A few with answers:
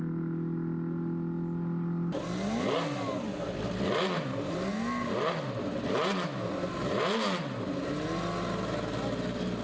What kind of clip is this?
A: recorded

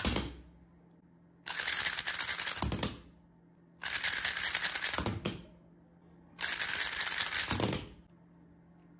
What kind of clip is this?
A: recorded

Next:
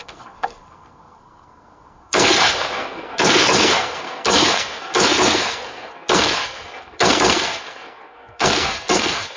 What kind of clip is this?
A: remade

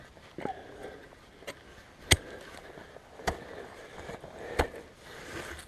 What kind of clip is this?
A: recorded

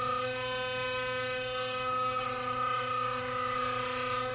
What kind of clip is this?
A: recorded